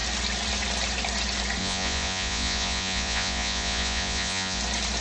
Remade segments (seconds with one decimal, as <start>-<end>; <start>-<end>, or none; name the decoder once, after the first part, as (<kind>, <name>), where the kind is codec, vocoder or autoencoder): 1.6-4.6 (vocoder, Vocos)